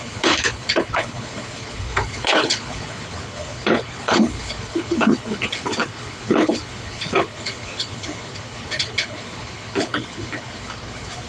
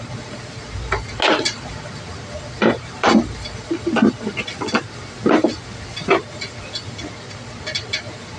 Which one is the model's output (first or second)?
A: first